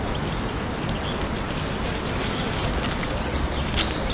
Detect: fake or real real